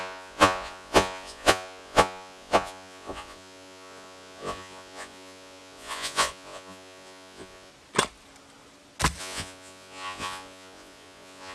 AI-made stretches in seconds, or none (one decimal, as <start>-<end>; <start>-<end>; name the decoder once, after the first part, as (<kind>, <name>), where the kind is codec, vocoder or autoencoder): 0.0-7.7 (vocoder, Vocos); 9.2-11.5